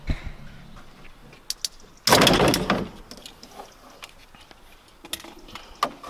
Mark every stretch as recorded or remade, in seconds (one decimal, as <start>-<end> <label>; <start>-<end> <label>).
0.0-6.1 recorded